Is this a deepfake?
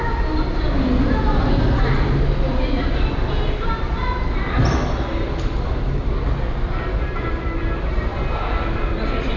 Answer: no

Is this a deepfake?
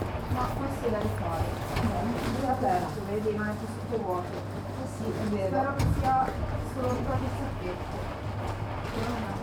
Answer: no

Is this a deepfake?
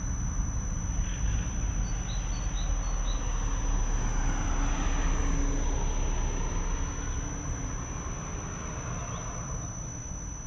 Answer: no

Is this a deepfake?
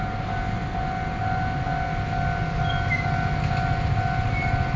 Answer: no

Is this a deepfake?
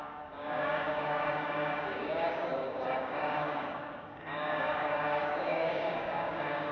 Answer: yes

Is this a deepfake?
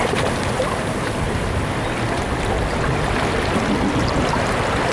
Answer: no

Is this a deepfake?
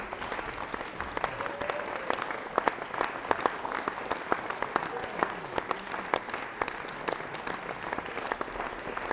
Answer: no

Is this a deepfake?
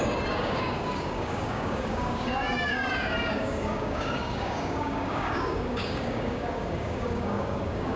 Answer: yes